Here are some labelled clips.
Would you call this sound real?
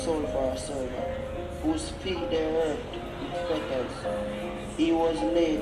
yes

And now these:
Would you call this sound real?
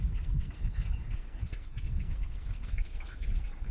no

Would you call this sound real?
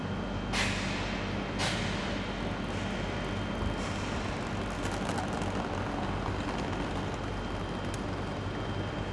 yes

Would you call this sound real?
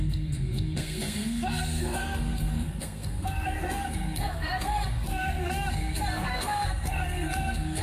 no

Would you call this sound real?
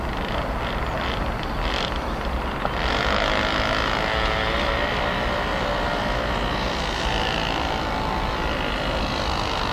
yes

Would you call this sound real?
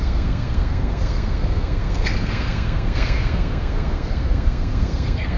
no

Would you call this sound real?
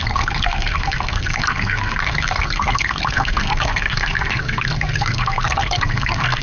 no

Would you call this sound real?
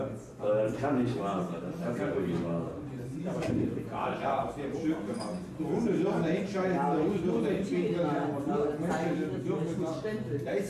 yes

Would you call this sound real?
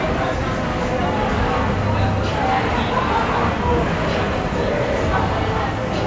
yes